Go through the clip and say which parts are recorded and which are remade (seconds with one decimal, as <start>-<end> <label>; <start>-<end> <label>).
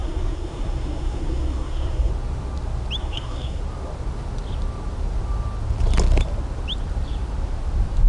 0.0-2.1 remade; 2.1-3.0 recorded; 3.0-3.6 remade; 3.6-8.1 recorded